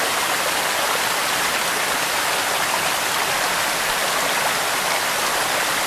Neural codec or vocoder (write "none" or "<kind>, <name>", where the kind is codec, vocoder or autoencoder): none